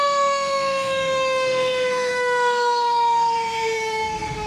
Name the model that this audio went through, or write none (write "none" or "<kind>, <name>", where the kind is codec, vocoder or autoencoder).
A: autoencoder, DAC-VAE